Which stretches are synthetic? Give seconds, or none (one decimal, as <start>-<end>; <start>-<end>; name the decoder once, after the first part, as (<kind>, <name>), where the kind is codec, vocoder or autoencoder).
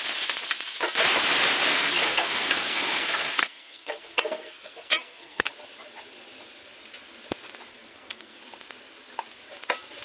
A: 1.7-5.5 (codec, SNAC); 7.7-8.4